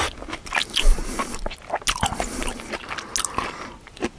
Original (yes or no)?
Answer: yes